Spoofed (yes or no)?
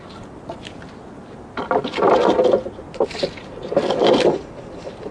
no